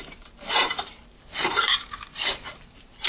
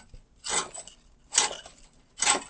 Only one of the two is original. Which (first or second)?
second